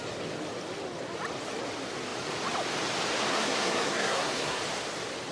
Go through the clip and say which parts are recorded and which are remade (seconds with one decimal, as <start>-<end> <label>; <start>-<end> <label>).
0.0-3.3 recorded; 3.3-4.6 remade; 4.6-5.3 recorded